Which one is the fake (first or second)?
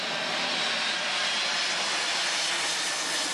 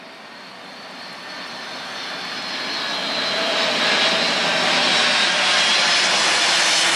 first